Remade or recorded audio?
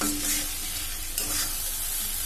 recorded